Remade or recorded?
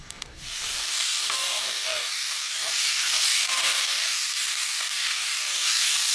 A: remade